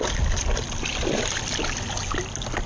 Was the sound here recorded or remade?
recorded